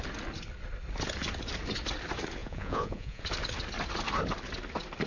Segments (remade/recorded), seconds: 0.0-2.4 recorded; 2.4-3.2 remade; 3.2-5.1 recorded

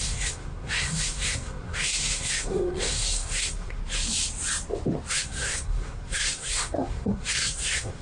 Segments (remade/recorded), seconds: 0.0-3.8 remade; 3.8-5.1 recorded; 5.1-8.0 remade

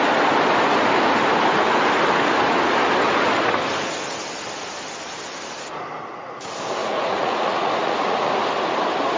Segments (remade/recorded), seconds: 0.0-6.8 recorded; 6.8-8.3 remade; 8.3-9.2 recorded